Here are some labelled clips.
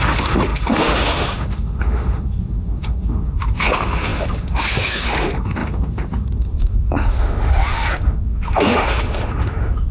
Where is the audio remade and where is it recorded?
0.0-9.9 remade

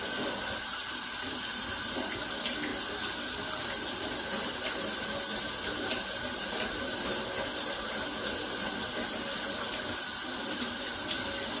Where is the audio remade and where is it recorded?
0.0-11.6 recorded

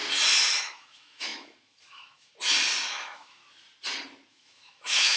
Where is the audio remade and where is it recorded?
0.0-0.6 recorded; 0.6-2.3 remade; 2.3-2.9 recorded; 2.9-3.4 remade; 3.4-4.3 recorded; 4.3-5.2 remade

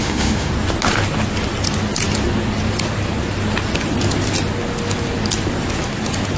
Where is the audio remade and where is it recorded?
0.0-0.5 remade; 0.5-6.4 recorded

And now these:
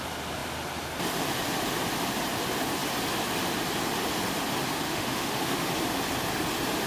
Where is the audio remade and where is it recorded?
0.0-4.9 recorded; 4.9-5.7 remade; 5.7-6.9 recorded

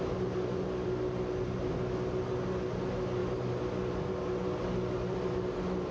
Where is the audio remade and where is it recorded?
0.0-5.9 recorded